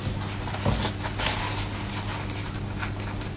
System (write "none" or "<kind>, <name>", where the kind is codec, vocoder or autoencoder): none